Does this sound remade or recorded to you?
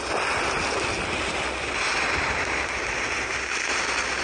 recorded